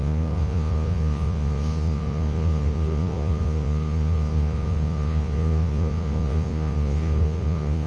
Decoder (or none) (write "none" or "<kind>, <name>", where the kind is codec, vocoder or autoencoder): vocoder, Vocos